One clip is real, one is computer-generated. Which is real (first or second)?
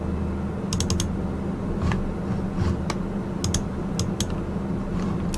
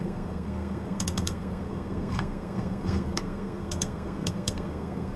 first